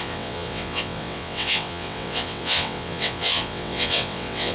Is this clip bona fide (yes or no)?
no